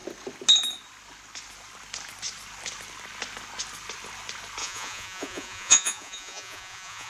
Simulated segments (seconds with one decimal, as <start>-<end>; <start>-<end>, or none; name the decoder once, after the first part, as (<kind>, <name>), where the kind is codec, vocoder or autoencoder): 4.6-7.1 (vocoder, Vocos)